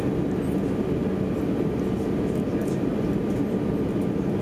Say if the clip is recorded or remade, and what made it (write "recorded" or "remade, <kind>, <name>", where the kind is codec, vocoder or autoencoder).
recorded